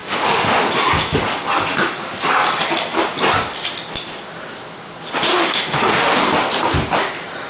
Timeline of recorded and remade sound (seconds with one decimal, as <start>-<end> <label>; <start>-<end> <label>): 0.0-0.6 remade; 0.6-5.3 recorded; 5.3-6.2 remade; 6.2-7.5 recorded